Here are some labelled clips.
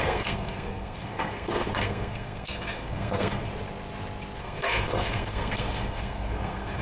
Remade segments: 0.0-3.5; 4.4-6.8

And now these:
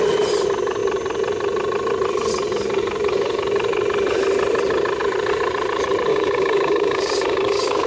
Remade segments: 6.1-7.9

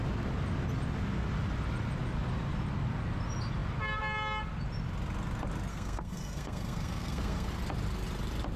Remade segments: 5.7-7.5

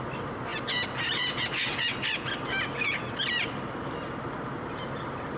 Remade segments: none

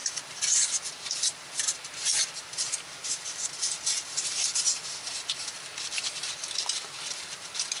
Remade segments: none

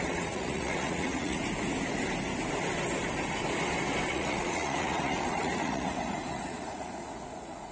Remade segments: 0.0-1.4; 4.1-7.7